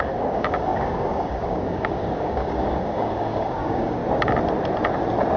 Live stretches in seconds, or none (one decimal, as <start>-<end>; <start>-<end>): 4.0-5.4